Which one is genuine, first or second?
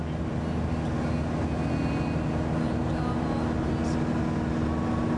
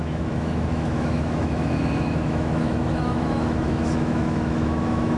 first